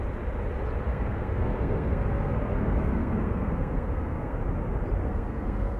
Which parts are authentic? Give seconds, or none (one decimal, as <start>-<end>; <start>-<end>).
0.0-0.9; 4.4-5.0